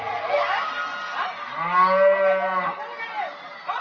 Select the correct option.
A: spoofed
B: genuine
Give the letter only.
B